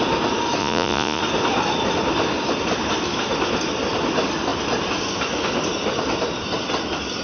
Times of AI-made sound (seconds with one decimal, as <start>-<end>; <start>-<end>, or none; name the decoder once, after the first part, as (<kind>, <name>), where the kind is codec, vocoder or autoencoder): 0.6-1.2 (vocoder, Vocos)